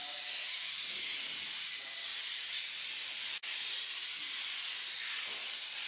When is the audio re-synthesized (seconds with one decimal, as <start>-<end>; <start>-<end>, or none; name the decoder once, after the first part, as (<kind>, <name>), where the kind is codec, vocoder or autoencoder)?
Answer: none